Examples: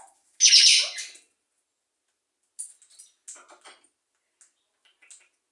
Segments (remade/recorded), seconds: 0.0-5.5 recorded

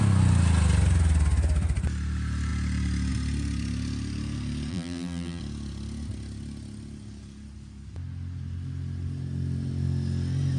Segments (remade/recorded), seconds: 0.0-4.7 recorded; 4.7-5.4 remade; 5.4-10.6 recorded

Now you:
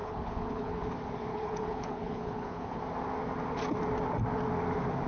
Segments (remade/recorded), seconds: 0.0-0.9 remade; 0.9-1.3 recorded; 1.3-2.8 remade; 2.8-5.1 recorded

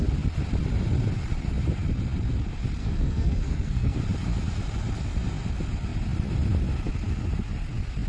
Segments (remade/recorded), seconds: 0.0-2.8 recorded; 2.8-4.0 remade; 4.0-8.1 recorded

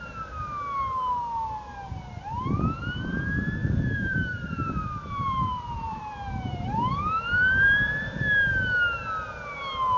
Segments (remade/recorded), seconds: 0.0-3.6 recorded; 3.6-8.2 remade; 8.2-10.0 recorded